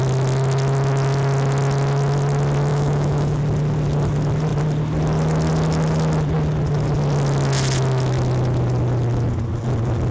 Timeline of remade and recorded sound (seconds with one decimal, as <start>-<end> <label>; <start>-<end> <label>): 0.0-2.7 recorded; 2.7-3.4 remade; 3.4-10.1 recorded